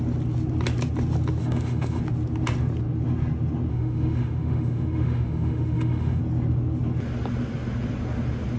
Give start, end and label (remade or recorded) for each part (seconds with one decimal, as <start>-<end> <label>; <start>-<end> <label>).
0.0-1.4 recorded; 1.4-2.0 remade; 2.0-3.7 recorded; 3.7-6.2 remade; 6.2-8.6 recorded